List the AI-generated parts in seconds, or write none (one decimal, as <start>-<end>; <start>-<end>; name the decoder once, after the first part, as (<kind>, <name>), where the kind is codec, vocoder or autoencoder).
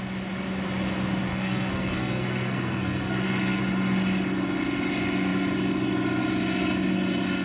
1.3-3.6 (codec, SNAC)